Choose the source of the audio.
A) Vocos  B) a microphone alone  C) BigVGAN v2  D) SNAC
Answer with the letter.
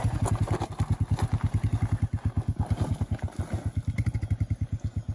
B